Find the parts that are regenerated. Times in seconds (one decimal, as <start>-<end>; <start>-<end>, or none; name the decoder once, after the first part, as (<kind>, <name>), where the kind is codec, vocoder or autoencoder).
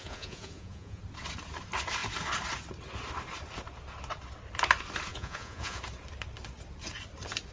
0.0-1.0 (vocoder, Vocos); 5.1-5.8